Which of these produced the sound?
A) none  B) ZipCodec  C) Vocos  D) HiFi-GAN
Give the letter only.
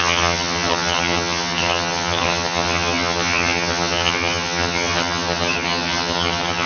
D